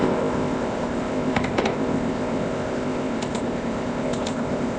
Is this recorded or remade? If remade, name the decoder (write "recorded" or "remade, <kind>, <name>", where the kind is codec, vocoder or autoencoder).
remade, codec, ZipCodec